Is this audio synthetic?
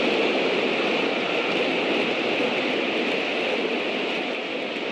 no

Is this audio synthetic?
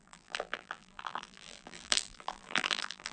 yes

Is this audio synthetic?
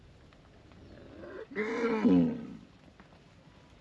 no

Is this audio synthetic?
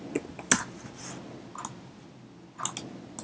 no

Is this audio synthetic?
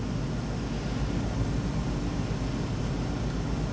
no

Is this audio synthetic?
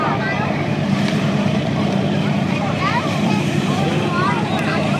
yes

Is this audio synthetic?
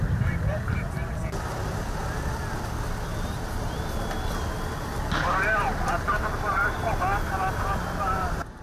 no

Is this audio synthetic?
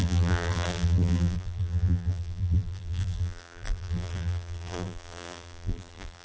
yes